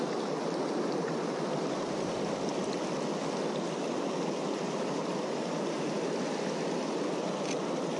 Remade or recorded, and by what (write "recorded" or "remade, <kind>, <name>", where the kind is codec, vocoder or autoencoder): recorded